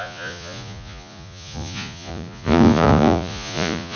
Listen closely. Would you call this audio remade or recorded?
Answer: remade